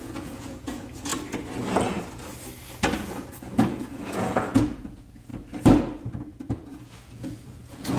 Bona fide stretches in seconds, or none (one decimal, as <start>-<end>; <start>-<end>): 1.1-3.1; 5.3-6.2